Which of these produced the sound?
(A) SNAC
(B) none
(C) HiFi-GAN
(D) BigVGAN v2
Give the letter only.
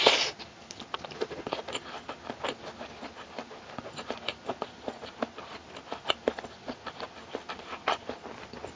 B